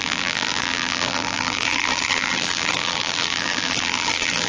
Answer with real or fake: fake